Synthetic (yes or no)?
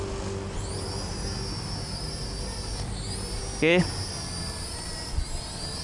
no